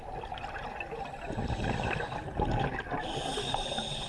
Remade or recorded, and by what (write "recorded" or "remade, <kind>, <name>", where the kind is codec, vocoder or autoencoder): recorded